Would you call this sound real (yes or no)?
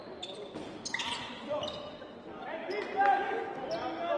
yes